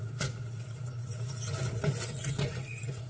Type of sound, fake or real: fake